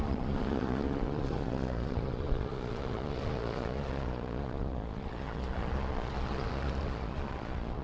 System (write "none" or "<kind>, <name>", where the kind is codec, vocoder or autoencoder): vocoder, Vocos